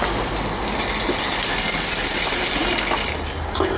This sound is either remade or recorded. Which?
recorded